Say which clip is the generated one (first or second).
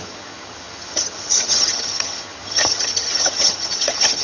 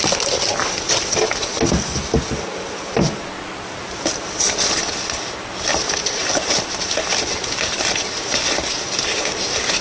first